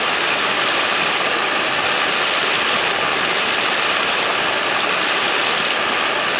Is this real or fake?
real